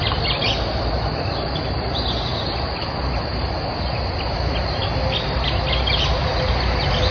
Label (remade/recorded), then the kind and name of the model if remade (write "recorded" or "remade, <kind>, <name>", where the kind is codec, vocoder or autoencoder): recorded